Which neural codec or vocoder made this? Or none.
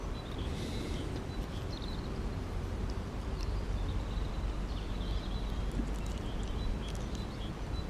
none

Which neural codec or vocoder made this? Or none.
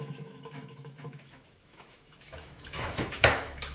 autoencoder, DAC-VAE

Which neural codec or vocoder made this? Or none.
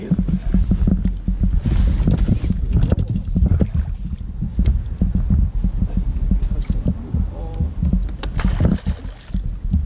none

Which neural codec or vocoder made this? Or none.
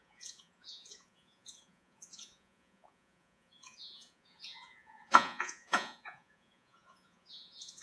vocoder, Vocos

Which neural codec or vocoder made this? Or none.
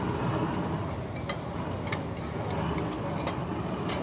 none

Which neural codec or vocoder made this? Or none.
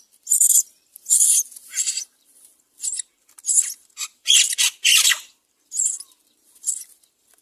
vocoder, BigVGAN v2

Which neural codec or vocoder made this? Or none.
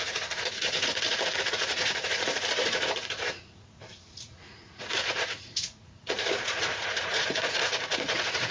vocoder, Vocos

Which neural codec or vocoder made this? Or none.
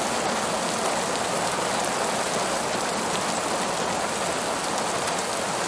none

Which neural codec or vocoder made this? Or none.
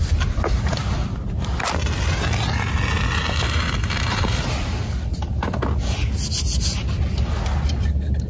none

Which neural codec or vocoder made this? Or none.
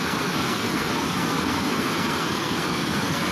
codec, SNAC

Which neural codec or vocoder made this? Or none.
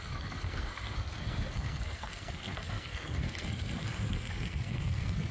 codec, SNAC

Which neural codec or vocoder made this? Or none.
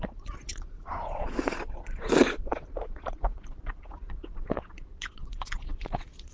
vocoder, Vocos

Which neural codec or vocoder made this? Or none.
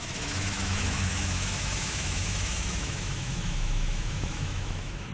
autoencoder, DAC-VAE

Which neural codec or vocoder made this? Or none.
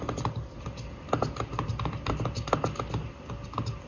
none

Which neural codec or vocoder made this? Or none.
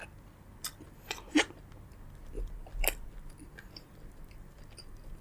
none